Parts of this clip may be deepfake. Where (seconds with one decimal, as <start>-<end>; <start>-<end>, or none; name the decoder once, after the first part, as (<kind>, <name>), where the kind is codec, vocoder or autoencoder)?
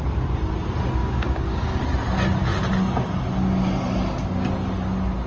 1.0-1.8 (codec, DAC)